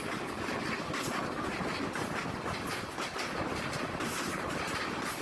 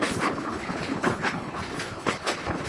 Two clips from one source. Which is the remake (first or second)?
second